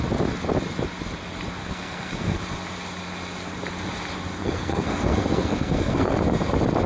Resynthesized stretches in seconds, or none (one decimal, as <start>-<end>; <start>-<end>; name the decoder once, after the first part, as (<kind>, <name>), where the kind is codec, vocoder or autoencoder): 1.6-2.4 (codec, SNAC); 4.4-6.2